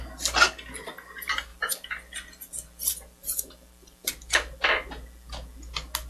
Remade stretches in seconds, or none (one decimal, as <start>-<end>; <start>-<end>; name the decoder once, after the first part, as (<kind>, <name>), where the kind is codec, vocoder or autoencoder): none